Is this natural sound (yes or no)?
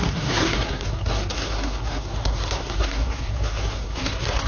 no